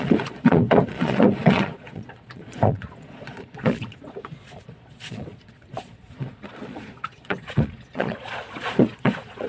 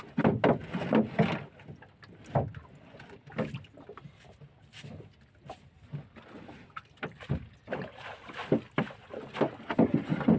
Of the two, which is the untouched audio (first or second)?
second